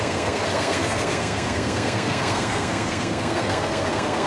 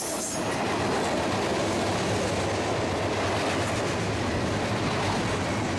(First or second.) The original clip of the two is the second